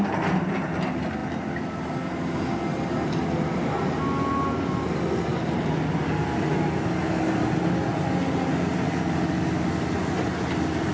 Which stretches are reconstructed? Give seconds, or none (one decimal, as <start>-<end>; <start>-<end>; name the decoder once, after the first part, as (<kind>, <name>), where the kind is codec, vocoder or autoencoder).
none